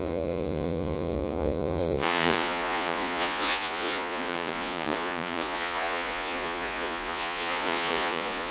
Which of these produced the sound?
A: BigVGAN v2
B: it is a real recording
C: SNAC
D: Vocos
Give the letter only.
D